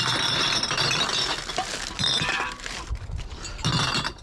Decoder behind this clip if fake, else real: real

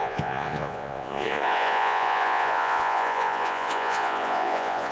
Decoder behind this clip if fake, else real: fake, vocoder, Vocos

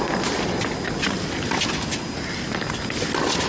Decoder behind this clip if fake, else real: real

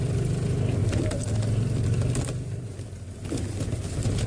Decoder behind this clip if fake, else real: real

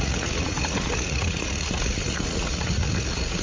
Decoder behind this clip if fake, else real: fake, vocoder, Vocos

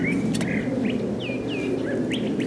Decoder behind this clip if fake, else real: real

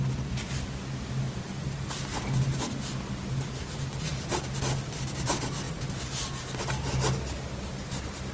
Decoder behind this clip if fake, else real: real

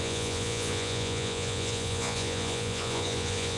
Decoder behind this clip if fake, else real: fake, vocoder, Vocos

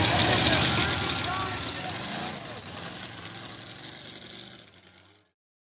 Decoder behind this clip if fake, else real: real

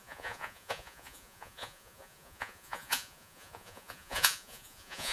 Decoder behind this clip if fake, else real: fake, vocoder, Vocos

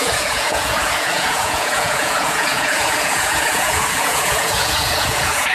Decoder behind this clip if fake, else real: fake, vocoder, Vocos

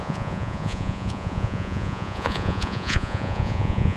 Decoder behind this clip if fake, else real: fake, vocoder, Vocos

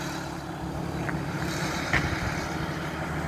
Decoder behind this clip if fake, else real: real